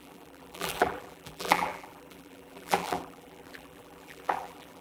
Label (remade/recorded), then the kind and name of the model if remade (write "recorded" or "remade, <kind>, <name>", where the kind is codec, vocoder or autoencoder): remade, vocoder, BigVGAN v2